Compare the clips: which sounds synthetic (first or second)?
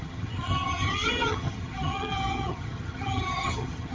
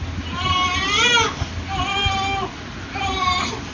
first